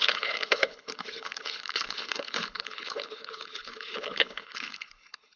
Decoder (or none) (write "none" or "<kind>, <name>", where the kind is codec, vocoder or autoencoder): codec, HILCodec